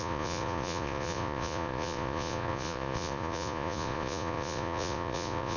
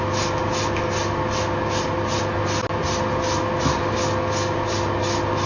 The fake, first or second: first